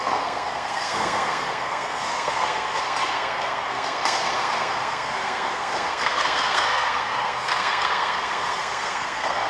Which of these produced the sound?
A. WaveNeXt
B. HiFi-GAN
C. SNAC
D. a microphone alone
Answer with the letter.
C